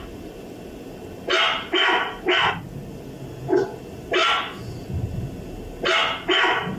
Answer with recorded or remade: recorded